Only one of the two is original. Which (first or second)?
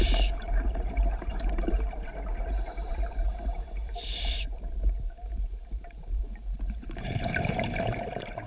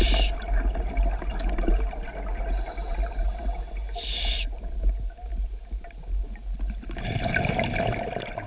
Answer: second